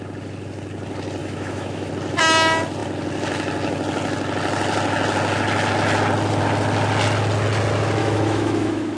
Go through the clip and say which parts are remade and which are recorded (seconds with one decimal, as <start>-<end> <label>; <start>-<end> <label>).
0.0-1.2 recorded; 1.2-1.9 remade; 1.9-8.0 recorded; 8.0-9.0 remade